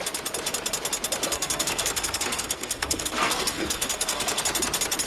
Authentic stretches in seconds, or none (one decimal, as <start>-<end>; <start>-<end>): 0.0-1.3; 4.4-5.1